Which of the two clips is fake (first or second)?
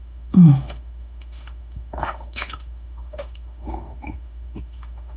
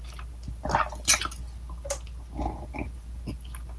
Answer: first